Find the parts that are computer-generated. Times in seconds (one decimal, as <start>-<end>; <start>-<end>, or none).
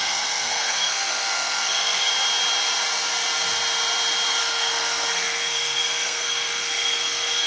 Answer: 0.0-2.1; 4.4-7.5